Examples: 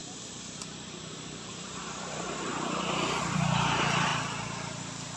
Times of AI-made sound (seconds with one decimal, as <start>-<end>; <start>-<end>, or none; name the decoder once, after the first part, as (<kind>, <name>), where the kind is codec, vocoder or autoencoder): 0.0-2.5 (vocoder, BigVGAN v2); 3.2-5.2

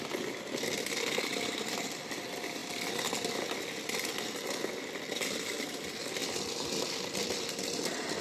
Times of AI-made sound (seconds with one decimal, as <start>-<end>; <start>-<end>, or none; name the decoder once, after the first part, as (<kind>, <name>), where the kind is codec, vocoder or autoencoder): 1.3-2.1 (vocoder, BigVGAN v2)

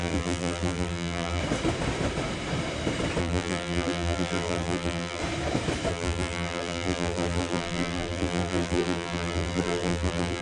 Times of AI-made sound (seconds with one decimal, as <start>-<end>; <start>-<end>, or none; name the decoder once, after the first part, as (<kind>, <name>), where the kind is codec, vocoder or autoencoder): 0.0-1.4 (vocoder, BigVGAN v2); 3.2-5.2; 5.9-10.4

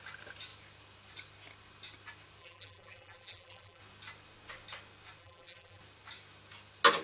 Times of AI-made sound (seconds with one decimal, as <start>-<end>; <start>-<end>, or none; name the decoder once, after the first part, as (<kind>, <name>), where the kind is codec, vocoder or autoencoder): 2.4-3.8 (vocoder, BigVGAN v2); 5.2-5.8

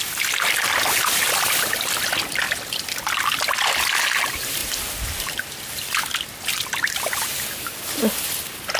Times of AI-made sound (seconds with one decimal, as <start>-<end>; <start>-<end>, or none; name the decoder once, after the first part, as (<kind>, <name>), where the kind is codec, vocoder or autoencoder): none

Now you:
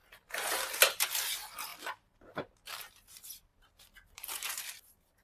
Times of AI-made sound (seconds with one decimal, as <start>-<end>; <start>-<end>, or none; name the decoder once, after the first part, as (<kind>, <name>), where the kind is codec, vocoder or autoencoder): 0.0-1.0 (vocoder, BigVGAN v2); 3.5-4.6

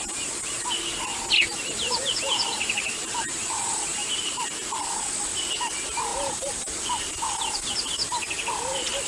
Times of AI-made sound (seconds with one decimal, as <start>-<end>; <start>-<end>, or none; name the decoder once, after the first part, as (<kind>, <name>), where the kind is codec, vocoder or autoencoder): 1.1-4.5 (vocoder, BigVGAN v2)

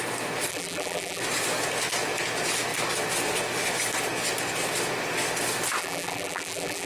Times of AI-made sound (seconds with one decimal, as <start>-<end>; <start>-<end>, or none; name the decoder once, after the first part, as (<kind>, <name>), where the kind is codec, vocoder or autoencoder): 0.5-1.2 (vocoder, BigVGAN v2); 5.8-6.9